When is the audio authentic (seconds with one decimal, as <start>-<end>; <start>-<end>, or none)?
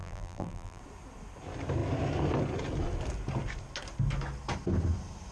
0.8-5.3